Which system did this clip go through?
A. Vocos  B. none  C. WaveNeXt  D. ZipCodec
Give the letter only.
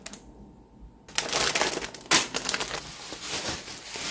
B